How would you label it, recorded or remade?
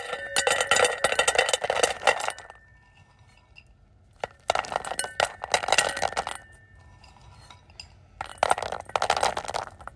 recorded